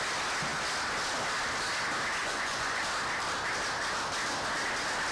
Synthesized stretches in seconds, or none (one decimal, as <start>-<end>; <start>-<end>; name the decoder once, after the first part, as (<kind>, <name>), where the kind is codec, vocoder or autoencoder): 2.2-2.8 (vocoder, Vocos)